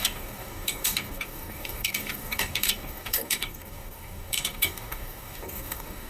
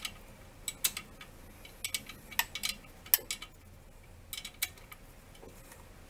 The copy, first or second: first